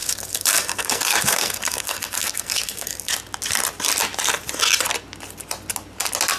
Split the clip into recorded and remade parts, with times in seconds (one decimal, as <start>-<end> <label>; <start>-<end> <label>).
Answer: 0.0-3.1 remade; 3.1-6.4 recorded